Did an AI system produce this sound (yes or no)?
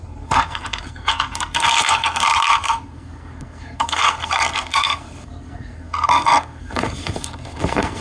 yes